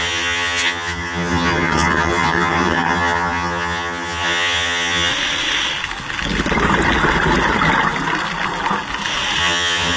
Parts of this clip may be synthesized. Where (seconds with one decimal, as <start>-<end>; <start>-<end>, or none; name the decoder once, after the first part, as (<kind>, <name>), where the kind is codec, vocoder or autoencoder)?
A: 0.0-5.1 (vocoder, HiFi-GAN); 9.4-10.0